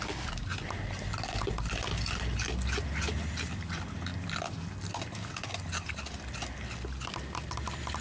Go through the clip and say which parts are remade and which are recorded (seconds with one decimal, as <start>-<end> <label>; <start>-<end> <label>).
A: 0.0-8.0 recorded